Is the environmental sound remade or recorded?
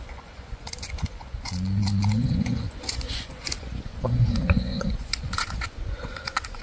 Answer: remade